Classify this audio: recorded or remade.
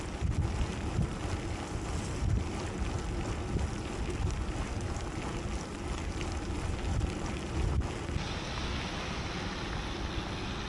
recorded